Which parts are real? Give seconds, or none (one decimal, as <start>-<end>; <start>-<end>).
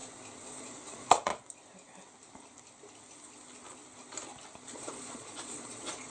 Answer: 0.0-0.6; 1.3-4.7